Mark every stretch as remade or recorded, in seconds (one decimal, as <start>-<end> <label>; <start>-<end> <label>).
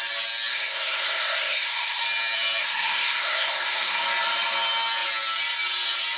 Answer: 0.0-0.5 recorded; 0.5-2.0 remade; 2.0-2.6 recorded; 2.6-4.0 remade; 4.0-6.2 recorded